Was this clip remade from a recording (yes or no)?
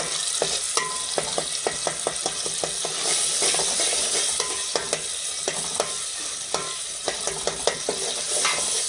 no